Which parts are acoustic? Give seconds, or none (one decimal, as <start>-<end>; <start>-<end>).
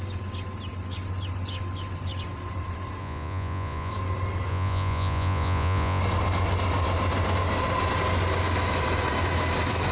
0.0-3.0; 3.9-4.5; 6.0-9.9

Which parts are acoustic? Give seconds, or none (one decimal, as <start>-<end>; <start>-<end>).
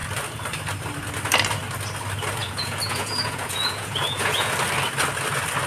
0.0-2.4; 4.5-5.7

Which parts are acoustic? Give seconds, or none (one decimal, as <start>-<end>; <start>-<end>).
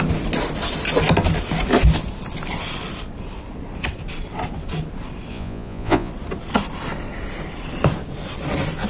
0.0-5.3; 6.1-8.9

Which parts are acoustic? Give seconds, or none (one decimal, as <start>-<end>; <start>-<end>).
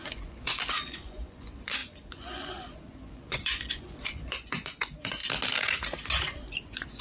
5.2-6.2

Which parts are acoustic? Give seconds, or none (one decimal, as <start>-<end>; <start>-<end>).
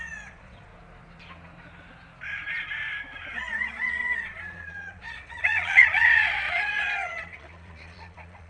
0.7-3.3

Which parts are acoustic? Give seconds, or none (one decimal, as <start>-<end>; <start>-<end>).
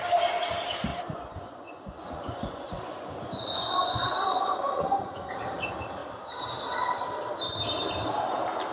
0.0-0.9; 5.3-8.7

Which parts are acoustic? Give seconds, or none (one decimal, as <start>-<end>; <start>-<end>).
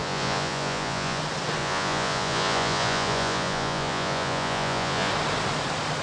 1.2-1.6; 5.1-6.0